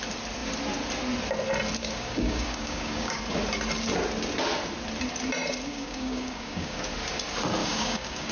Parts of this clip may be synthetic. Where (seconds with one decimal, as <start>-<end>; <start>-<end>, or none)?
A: 1.8-3.2; 5.7-6.8; 7.6-8.3